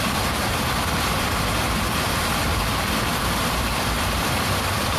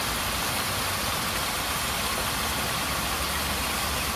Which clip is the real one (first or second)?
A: second